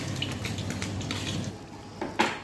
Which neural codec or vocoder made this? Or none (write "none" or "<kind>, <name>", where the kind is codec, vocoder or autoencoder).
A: none